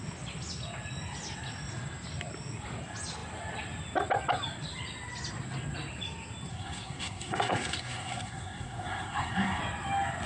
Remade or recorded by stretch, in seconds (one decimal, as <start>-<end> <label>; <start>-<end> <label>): 0.0-6.5 recorded; 6.5-9.6 remade; 9.6-10.3 recorded